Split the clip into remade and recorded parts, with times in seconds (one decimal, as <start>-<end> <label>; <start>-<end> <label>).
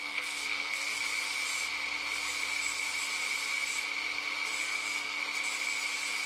0.0-1.0 remade; 1.0-4.6 recorded; 4.6-5.2 remade; 5.2-6.3 recorded